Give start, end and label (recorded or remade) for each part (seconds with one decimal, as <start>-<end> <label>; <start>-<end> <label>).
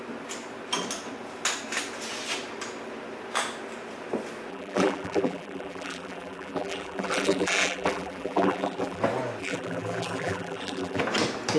0.0-4.5 recorded; 4.5-9.0 remade; 9.0-9.4 recorded; 9.4-11.0 remade; 11.0-11.6 recorded